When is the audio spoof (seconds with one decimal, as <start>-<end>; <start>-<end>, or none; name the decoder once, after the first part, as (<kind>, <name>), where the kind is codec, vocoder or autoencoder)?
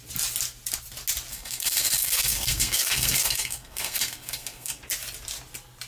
1.3-4.8 (codec, SNAC)